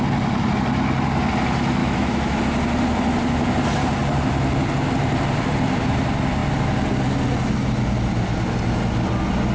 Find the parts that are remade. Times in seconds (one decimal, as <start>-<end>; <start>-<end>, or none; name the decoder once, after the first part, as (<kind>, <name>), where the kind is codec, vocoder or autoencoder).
1.8-2.4 (autoencoder, DAC-VAE)